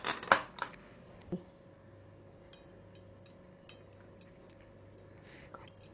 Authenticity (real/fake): real